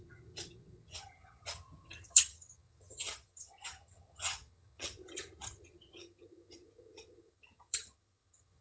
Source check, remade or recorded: remade